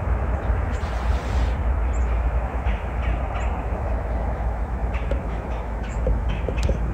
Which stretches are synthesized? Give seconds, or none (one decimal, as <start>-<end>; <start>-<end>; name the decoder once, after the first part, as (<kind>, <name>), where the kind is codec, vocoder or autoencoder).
0.0-0.8 (autoencoder, DAC-VAE); 2.0-3.0; 3.6-6.9